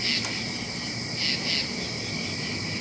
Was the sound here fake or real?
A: real